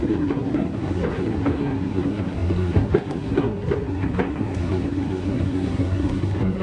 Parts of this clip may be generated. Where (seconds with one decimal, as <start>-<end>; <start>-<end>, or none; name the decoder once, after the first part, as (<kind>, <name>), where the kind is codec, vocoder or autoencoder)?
0.0-6.6 (codec, SNAC)